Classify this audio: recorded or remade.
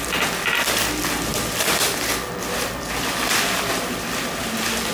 remade